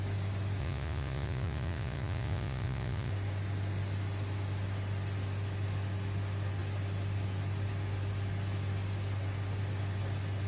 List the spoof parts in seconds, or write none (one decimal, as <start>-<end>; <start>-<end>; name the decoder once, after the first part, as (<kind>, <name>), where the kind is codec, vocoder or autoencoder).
0.6-3.1 (vocoder, Vocos)